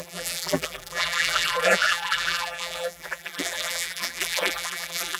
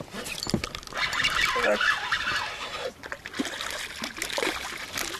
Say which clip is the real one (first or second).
second